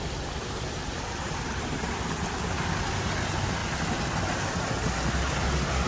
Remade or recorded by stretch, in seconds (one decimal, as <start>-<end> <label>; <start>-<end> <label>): 0.0-0.8 recorded; 0.8-1.9 remade; 1.9-5.9 recorded

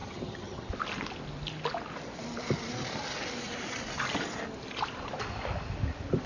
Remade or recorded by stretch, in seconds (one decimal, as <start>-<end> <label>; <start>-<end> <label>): 0.0-0.7 remade; 0.7-6.3 recorded

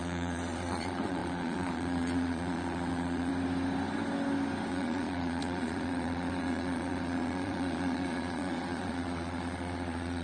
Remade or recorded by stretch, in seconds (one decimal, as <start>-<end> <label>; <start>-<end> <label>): 0.0-3.3 remade; 3.3-4.7 recorded; 4.7-10.2 remade

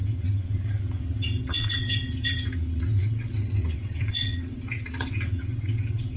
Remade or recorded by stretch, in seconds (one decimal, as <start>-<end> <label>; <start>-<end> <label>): 0.0-6.2 remade